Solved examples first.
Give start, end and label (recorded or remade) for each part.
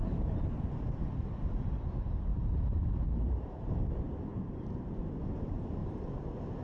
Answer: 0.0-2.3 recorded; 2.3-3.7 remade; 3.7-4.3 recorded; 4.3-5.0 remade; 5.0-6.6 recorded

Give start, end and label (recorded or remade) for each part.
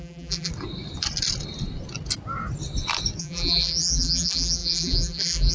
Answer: 0.0-0.5 remade; 0.5-3.2 recorded; 3.2-5.5 remade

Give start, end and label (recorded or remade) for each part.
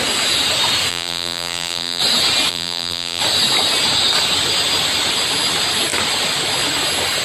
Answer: 0.0-0.9 recorded; 0.9-2.0 remade; 2.0-2.5 recorded; 2.5-3.2 remade; 3.2-7.2 recorded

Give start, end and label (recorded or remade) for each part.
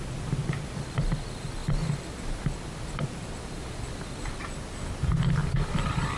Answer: 0.0-1.6 remade; 1.6-5.3 recorded; 5.3-6.2 remade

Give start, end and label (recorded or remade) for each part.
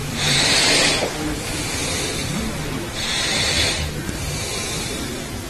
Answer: 0.0-1.1 remade; 1.1-2.2 recorded; 2.2-5.5 remade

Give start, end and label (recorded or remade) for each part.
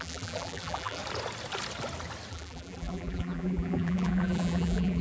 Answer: 0.0-1.0 remade; 1.0-2.3 recorded; 2.3-5.0 remade